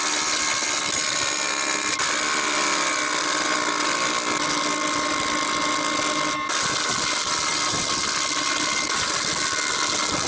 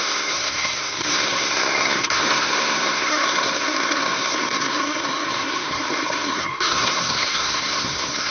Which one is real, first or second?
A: first